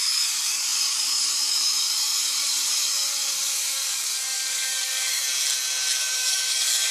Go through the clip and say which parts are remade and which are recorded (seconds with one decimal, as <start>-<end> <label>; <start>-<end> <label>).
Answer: 0.0-5.2 remade; 5.2-6.0 recorded; 6.0-6.9 remade